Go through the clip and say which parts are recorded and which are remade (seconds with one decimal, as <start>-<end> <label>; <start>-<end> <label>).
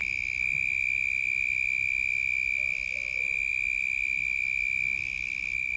0.0-5.8 remade